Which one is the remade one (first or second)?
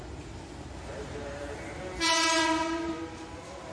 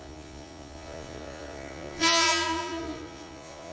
second